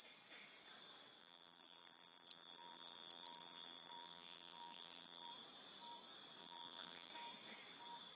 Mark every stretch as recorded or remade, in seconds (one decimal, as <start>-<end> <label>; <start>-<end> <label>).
0.0-1.2 recorded; 1.2-5.3 remade; 5.3-6.4 recorded; 6.4-7.1 remade; 7.1-8.2 recorded